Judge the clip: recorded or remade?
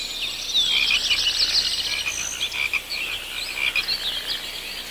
recorded